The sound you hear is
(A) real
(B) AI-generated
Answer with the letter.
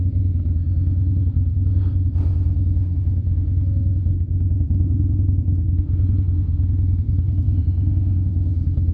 B